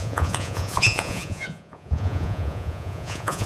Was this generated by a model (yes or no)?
yes